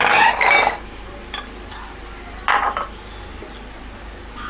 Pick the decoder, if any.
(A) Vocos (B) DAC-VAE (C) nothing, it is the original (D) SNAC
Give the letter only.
C